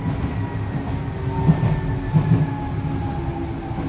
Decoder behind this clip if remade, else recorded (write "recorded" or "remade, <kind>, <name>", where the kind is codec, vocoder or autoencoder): recorded